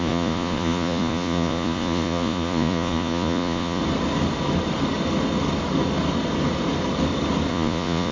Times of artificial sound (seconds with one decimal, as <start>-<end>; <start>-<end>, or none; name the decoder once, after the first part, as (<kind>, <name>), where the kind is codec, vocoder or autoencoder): 0.0-3.8 (vocoder, Vocos); 7.5-8.1